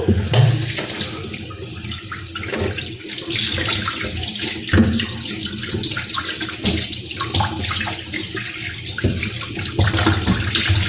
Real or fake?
real